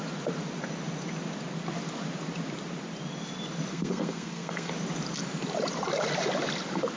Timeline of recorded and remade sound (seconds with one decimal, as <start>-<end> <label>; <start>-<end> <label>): 0.0-3.7 recorded; 3.7-4.7 remade; 4.7-7.0 recorded